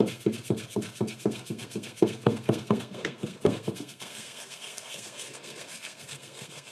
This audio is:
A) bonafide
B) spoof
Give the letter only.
B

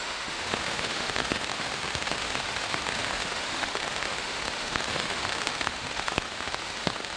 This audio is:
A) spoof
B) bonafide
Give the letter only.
A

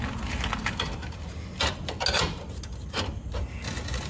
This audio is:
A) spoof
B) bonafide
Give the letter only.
B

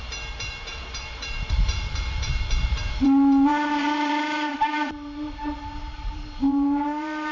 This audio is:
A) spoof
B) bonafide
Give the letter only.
A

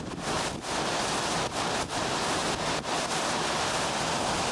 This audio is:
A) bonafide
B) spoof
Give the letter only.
A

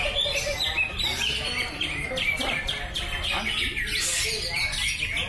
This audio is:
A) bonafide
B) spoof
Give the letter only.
A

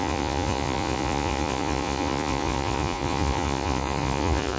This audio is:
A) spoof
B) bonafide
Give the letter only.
A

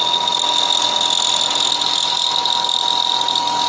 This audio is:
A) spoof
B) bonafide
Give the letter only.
B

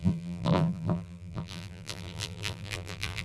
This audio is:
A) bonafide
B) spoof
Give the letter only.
B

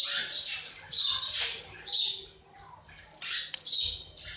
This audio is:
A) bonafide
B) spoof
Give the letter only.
A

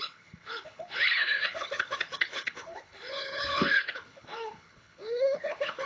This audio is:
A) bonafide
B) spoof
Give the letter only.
B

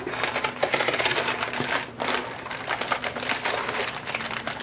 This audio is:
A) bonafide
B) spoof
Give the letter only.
A